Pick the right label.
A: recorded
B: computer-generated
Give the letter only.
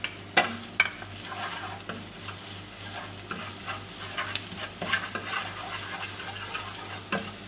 A